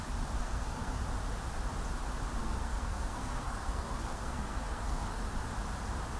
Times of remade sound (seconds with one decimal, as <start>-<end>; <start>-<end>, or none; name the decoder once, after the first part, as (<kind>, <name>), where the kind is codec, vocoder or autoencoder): 0.4-1.0 (codec, SNAC); 2.4-5.2